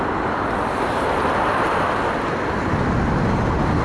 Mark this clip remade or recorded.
recorded